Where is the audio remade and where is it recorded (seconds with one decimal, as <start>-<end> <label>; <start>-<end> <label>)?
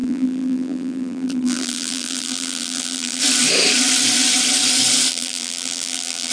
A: 0.0-3.2 remade; 3.2-5.1 recorded; 5.1-6.3 remade